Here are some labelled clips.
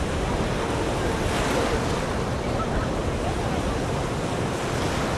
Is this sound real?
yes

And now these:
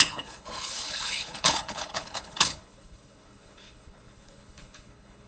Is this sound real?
no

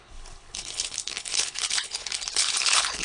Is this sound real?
no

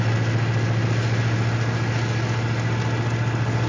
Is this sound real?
yes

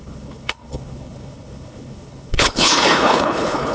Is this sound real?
no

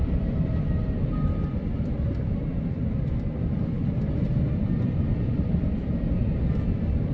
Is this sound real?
yes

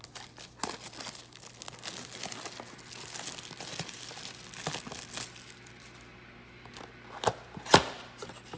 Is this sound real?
yes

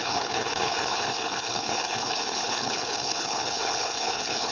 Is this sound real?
no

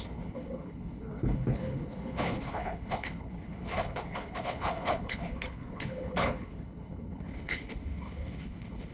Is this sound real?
no